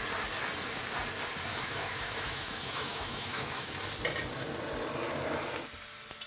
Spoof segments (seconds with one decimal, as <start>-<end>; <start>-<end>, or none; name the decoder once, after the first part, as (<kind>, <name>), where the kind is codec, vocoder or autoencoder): 1.5-3.7 (autoencoder, DAC-VAE)